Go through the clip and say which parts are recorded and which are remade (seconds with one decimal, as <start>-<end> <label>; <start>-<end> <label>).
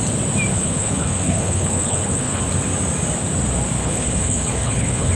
0.0-0.5 recorded; 0.5-2.4 remade; 2.4-3.8 recorded; 3.8-5.1 remade